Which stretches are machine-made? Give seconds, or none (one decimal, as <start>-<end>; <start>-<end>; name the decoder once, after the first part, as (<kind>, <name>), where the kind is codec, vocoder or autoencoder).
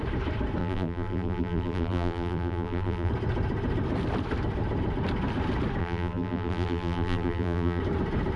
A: 0.6-3.1 (vocoder, BigVGAN v2); 5.8-7.8